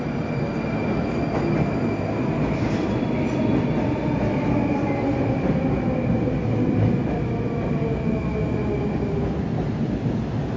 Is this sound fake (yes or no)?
no